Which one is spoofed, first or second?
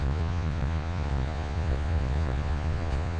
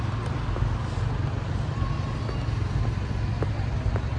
first